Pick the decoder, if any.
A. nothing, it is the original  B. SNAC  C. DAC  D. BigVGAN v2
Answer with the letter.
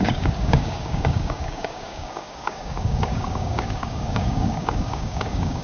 C